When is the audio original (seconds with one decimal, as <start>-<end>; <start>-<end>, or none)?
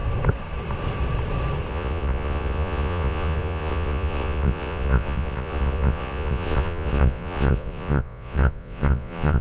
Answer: 0.0-1.7